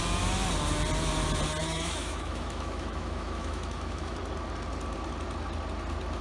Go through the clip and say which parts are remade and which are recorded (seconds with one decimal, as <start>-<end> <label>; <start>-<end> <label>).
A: 0.0-1.6 recorded; 1.6-4.2 remade; 4.2-6.2 recorded